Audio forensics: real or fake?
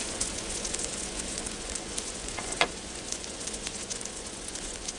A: fake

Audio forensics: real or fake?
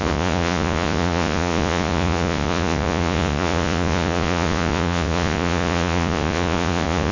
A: fake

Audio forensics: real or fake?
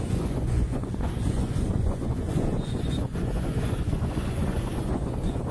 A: fake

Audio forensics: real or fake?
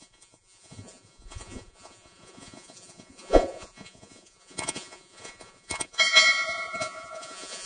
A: fake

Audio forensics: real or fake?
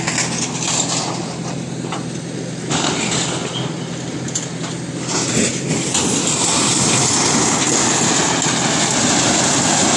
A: real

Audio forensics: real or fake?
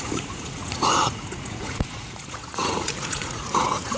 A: fake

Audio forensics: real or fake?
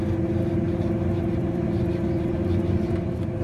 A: real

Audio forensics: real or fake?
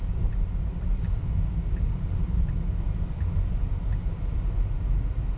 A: real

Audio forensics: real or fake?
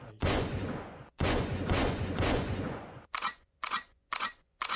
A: fake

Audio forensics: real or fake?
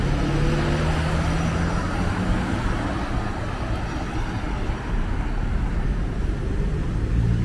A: real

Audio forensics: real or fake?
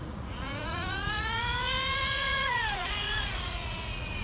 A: fake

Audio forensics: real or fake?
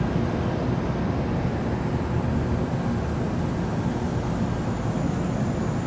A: real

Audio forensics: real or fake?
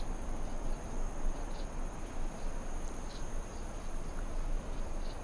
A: real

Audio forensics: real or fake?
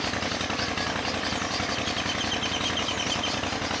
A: real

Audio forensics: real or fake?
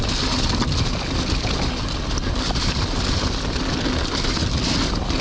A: real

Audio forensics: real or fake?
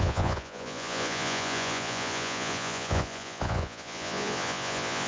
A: fake